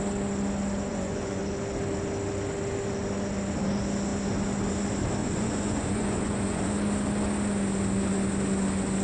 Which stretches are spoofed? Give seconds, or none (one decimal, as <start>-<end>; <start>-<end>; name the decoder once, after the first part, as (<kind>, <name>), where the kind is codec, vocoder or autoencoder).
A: 0.9-1.4 (vocoder, Vocos); 5.2-6.7